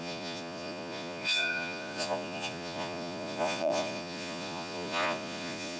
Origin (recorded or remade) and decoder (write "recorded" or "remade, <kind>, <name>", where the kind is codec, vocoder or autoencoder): remade, vocoder, Vocos